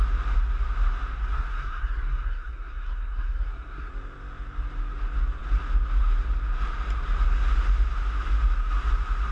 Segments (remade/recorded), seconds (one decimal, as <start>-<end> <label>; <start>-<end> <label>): 0.0-1.3 recorded; 1.3-3.9 remade; 3.9-9.3 recorded